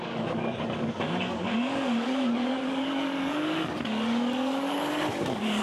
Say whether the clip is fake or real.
fake